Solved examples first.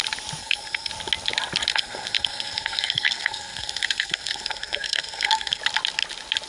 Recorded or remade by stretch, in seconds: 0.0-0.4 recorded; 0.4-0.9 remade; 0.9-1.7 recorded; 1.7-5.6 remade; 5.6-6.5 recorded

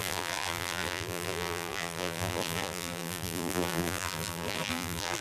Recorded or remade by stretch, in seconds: 0.0-5.2 remade

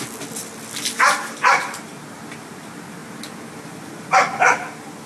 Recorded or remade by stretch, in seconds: 0.0-5.1 remade

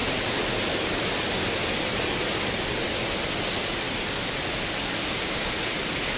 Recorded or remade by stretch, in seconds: 0.0-6.2 recorded

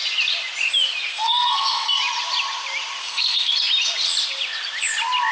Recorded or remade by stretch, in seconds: 0.0-1.1 recorded; 1.1-2.0 remade; 2.0-3.0 recorded; 3.0-3.5 remade; 3.5-5.3 recorded